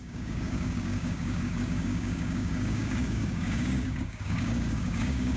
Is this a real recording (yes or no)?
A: no